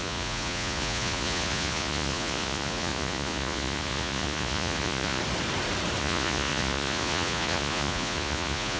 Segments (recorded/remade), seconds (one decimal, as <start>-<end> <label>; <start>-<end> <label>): 0.0-5.2 remade; 5.2-6.0 recorded; 6.0-8.8 remade